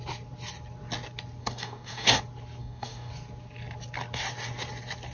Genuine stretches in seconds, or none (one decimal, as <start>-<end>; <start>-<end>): 0.0-1.4; 2.2-2.6; 3.1-5.1